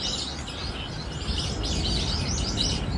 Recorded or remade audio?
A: recorded